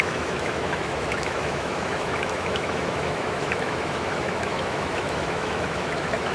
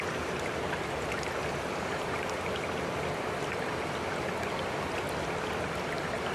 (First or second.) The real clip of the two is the second